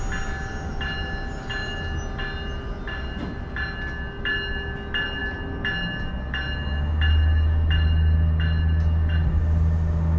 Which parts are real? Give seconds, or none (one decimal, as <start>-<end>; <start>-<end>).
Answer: 0.0-10.2